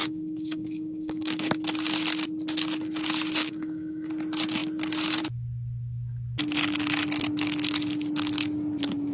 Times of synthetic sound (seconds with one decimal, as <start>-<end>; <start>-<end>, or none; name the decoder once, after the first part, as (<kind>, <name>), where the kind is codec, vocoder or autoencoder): 0.0-1.5 (codec, DAC); 3.4-4.1